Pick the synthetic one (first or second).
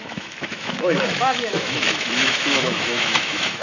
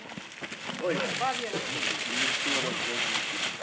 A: first